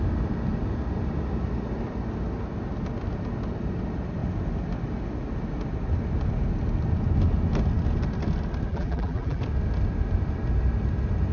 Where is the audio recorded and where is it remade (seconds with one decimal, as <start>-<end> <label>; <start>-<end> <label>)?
0.0-8.7 recorded; 8.7-9.4 remade; 9.4-11.3 recorded